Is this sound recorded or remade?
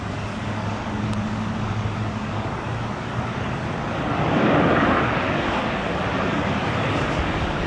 remade